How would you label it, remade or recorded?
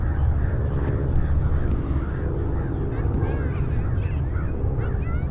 recorded